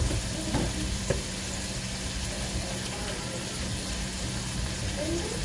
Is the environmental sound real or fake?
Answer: real